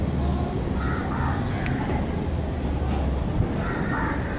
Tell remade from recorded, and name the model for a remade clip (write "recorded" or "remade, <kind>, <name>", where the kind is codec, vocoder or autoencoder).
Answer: recorded